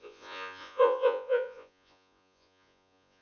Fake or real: fake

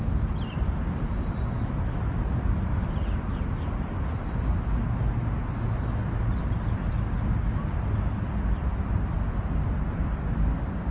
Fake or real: real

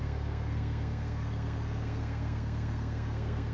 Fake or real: fake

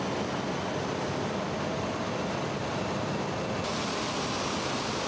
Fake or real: real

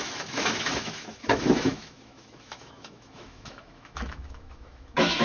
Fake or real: fake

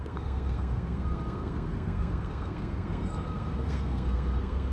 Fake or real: fake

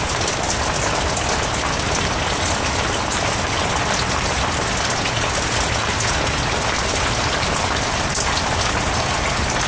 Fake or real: real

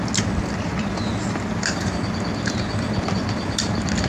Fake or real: real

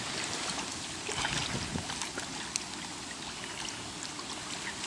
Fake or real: real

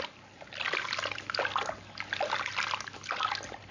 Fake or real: real